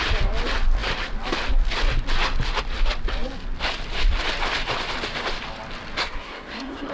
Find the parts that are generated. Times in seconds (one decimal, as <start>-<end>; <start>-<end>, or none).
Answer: 6.0-6.9

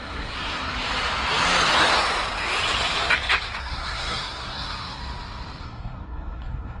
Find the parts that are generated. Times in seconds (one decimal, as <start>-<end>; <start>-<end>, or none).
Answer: 0.0-0.7; 3.6-5.0; 5.6-6.8

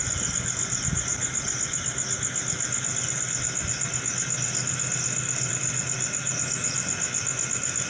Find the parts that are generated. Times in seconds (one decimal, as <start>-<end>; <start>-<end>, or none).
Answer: none

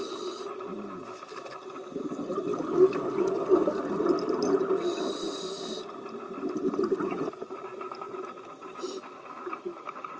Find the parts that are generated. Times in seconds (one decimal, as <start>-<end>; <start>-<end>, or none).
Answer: 2.5-3.8

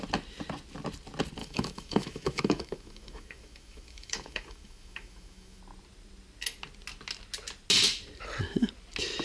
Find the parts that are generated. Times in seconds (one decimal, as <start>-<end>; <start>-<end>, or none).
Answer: 1.4-5.6